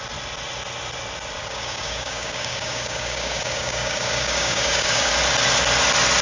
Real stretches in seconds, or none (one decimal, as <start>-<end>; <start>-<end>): 0.0-1.4; 5.1-6.2